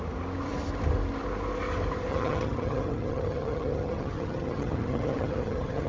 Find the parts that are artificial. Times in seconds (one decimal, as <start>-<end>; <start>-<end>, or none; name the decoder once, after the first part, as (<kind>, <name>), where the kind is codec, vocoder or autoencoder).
2.1-5.9 (vocoder, HiFi-GAN)